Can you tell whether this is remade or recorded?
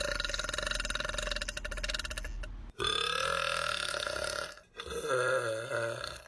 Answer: recorded